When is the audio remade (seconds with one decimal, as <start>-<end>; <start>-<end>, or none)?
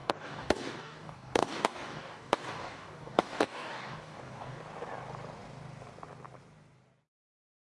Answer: 0.0-4.6